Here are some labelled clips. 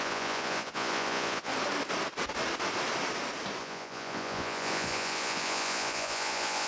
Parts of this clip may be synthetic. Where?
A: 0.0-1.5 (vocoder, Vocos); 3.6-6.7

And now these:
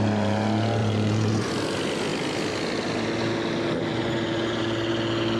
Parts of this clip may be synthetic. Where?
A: 0.8-1.5 (vocoder, Vocos); 3.9-4.6

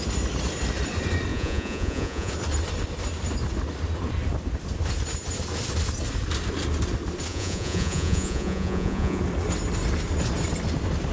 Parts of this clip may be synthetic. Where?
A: 1.3-2.3 (vocoder, Vocos); 7.3-9.2

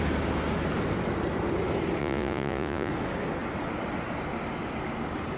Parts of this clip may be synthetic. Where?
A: 2.0-2.9 (vocoder, Vocos)

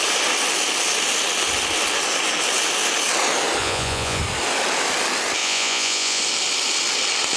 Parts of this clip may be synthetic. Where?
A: 3.6-4.2 (vocoder, Vocos); 5.4-6.2

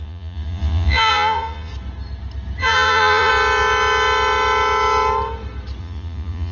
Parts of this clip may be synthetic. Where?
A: 0.0-1.7 (vocoder, Vocos); 2.6-3.3; 5.8-6.5

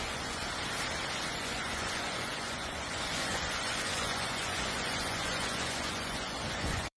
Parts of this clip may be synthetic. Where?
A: 0.0-0.4 (vocoder, Vocos); 1.1-7.0

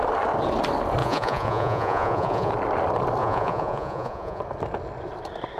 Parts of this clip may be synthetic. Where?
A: 1.0-2.5 (vocoder, Vocos); 3.2-4.4